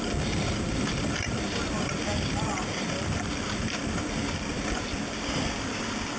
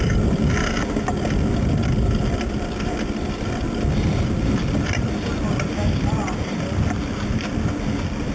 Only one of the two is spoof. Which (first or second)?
first